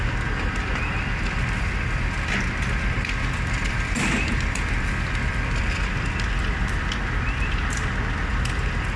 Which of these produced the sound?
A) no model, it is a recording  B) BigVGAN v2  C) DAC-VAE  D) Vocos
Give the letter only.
A